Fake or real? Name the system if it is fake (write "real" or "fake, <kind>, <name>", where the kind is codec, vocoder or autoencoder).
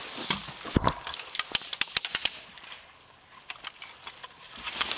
real